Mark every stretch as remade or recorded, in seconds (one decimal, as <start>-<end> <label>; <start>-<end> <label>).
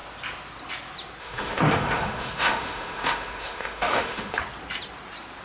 0.0-1.2 recorded; 1.2-4.4 remade; 4.4-5.4 recorded